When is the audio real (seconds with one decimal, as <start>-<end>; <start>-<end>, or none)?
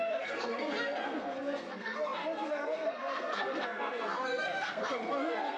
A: none